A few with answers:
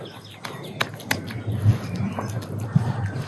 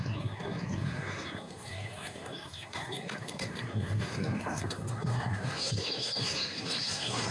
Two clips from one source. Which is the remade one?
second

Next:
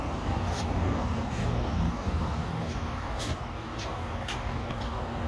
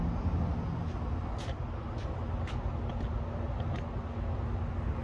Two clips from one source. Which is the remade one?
first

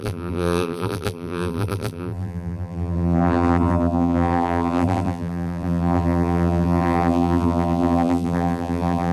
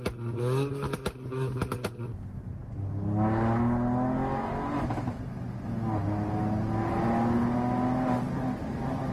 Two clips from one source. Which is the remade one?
first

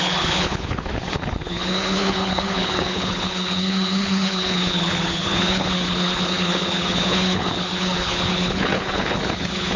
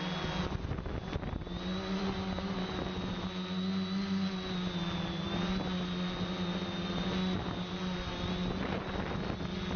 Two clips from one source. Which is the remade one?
first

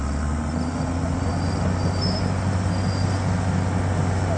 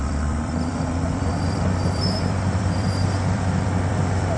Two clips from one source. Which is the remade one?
second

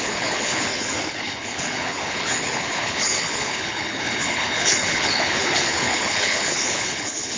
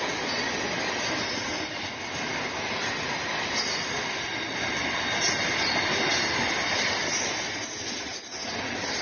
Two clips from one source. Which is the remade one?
first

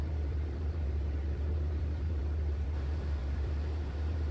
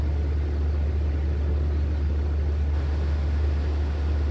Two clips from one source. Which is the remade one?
first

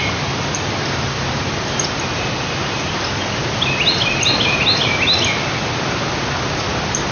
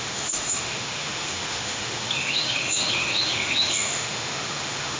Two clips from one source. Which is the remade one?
second